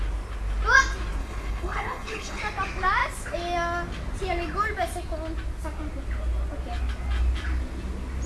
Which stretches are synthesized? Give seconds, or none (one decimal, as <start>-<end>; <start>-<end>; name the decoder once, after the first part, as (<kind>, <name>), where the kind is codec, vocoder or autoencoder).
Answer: 1.2-2.4 (codec, HILCodec)